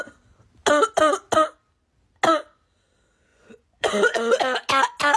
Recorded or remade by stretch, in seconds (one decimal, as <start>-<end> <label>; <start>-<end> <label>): 0.0-3.3 recorded; 3.3-4.4 remade; 4.4-5.2 recorded